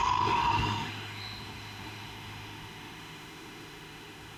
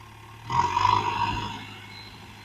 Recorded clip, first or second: second